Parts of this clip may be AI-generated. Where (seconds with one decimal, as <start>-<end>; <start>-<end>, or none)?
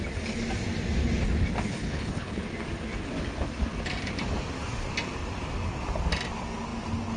1.7-2.4